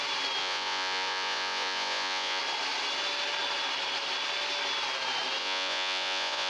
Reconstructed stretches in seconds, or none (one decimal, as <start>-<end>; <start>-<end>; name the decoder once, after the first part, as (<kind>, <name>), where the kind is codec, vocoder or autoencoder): 0.4-2.4 (vocoder, Vocos); 5.4-6.5